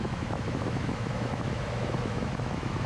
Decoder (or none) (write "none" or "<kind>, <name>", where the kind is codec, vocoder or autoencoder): autoencoder, DAC-VAE